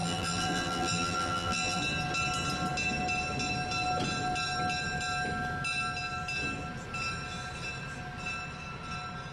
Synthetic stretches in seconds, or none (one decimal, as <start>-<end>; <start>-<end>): 0.0-1.8